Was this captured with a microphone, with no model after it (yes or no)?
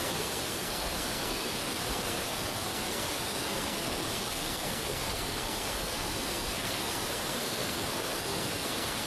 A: no